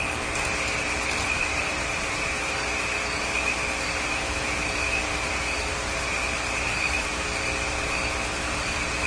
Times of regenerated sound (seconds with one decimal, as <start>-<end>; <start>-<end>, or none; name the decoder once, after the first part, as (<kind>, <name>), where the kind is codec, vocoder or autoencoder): 0.0-1.6 (vocoder, BigVGAN v2); 5.6-9.1